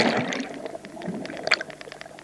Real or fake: real